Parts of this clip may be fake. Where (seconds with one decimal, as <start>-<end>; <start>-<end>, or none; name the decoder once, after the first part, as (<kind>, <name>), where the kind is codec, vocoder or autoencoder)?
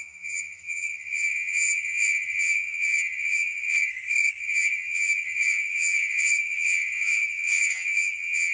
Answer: 0.0-3.9 (vocoder, HiFi-GAN); 4.4-8.5